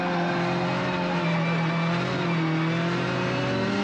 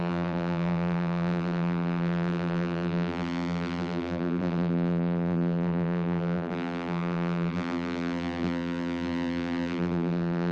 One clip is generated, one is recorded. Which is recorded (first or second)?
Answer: first